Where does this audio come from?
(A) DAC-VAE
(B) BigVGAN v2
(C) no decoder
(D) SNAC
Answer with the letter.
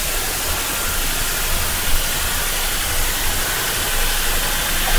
C